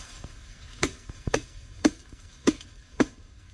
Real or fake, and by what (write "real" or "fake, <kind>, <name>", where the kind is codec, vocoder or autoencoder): fake, codec, SNAC